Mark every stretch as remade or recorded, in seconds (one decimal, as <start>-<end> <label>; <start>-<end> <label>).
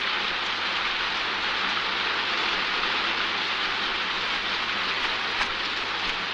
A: 0.0-6.3 recorded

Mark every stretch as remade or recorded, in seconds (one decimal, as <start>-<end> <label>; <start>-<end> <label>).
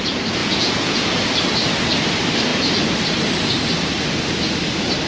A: 0.0-0.4 recorded; 0.4-1.1 remade; 1.1-5.1 recorded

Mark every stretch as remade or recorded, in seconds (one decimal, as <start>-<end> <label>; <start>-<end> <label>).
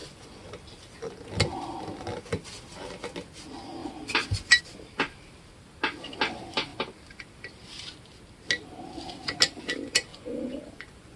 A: 0.0-0.5 remade; 0.5-10.1 recorded; 10.1-11.2 remade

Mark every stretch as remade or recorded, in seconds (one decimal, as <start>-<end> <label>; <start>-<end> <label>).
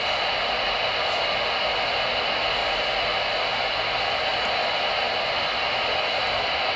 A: 0.0-6.8 recorded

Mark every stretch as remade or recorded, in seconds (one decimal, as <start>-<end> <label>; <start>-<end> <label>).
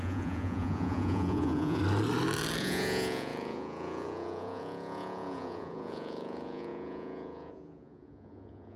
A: 0.0-1.8 remade; 1.8-2.6 recorded; 2.6-8.8 remade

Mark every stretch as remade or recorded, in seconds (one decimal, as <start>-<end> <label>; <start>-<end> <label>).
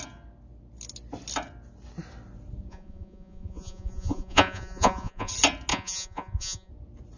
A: 0.0-2.7 recorded; 2.7-5.3 remade; 5.3-5.7 recorded; 5.7-6.7 remade; 6.7-7.2 recorded